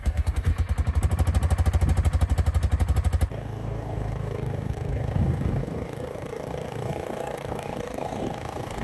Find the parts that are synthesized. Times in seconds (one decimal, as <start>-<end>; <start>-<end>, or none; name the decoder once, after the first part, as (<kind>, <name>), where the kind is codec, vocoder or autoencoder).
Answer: 0.0-0.5 (codec, DAC); 3.3-8.8